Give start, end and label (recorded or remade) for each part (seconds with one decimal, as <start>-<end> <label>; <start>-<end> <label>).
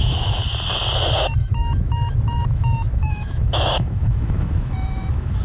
0.0-0.4 remade; 0.4-1.2 recorded; 1.2-5.4 remade